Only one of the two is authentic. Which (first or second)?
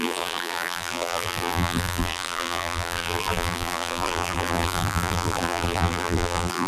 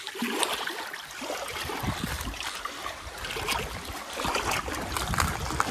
second